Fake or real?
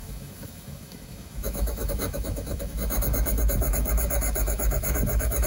fake